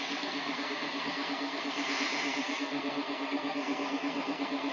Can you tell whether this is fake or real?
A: fake